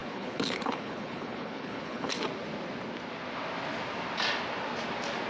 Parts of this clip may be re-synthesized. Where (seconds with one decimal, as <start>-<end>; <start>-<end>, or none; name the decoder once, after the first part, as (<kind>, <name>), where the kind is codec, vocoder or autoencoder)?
0.0-2.1 (codec, HILCodec)